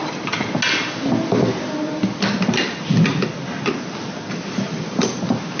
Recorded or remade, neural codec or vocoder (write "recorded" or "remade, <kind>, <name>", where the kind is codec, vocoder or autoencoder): recorded